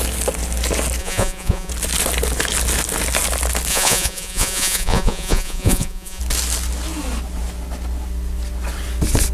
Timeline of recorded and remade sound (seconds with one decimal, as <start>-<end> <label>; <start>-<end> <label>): 0.0-1.0 recorded; 1.0-1.7 remade; 1.7-3.7 recorded; 3.7-6.2 remade; 6.2-9.3 recorded